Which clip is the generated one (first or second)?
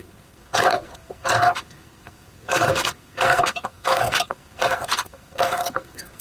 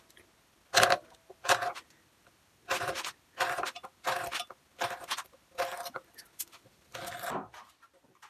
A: first